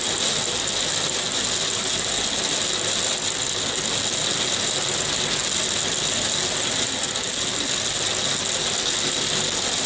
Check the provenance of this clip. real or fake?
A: real